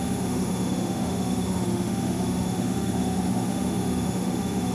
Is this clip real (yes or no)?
no